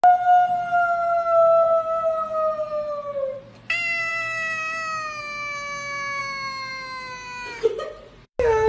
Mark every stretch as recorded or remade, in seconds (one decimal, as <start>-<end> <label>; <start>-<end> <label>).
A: 0.0-8.7 recorded